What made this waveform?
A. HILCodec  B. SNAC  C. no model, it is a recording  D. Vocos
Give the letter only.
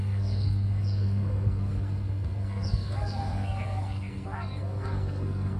B